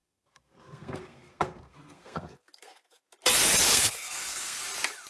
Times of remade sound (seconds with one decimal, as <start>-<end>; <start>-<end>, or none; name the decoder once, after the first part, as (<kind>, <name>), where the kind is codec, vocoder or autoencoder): 0.0-3.1 (codec, SNAC); 3.7-4.6